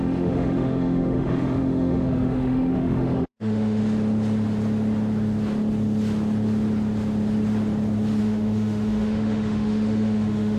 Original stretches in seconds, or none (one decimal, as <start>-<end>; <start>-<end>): 3.8-8.2